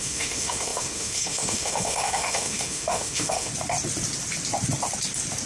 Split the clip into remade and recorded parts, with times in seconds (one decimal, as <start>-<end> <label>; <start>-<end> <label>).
0.0-3.5 remade; 3.5-5.5 recorded